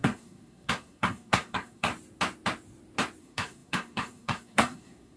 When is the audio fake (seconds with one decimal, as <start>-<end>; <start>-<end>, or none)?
0.0-1.9; 3.2-5.2